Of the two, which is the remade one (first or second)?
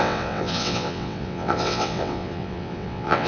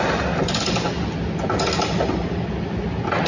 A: first